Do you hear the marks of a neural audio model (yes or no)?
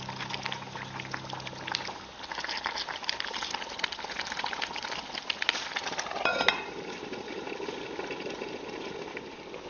no